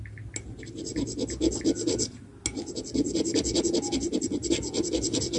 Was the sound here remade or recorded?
recorded